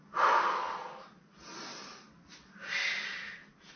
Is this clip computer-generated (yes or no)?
no